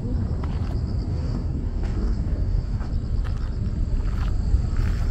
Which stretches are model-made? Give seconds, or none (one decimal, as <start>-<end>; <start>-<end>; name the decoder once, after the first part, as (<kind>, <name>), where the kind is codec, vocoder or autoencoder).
1.1-2.9 (codec, DAC)